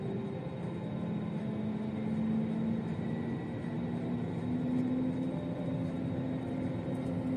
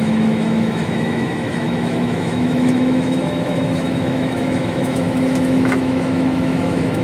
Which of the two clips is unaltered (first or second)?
first